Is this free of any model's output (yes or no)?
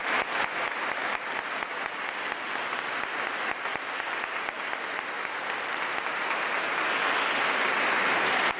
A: yes